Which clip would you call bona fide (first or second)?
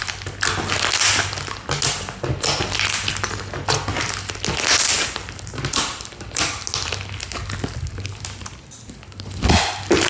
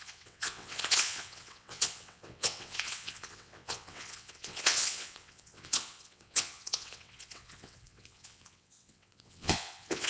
first